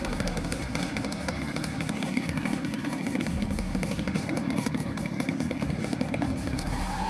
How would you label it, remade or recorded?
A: remade